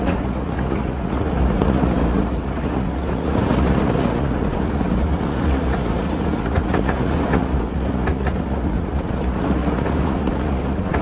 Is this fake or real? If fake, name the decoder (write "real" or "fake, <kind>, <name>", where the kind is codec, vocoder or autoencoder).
fake, vocoder, Vocos